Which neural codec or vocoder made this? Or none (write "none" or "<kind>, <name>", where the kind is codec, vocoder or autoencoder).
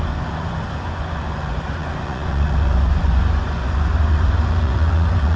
vocoder, Vocos